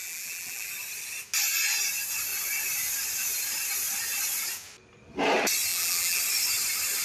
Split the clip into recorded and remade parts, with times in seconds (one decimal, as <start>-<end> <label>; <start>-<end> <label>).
0.0-0.7 remade; 0.7-5.7 recorded; 5.7-6.2 remade; 6.2-7.0 recorded